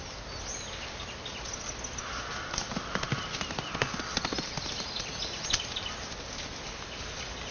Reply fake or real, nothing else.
real